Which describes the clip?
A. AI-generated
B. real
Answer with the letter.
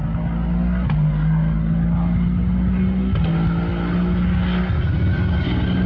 B